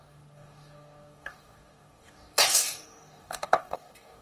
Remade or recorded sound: remade